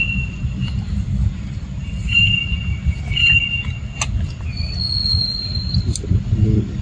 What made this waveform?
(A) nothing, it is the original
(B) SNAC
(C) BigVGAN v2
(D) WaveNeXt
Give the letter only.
A